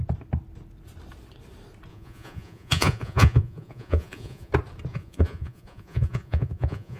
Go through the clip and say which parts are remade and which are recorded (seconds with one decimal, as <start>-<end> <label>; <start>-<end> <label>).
0.0-1.9 recorded; 1.9-4.5 remade; 4.5-4.9 recorded; 4.9-7.0 remade